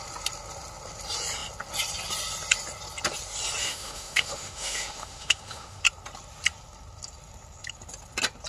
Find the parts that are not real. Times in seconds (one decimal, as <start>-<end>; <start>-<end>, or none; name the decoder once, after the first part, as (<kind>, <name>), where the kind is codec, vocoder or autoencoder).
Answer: 3.6-5.8 (autoencoder, DAC-VAE)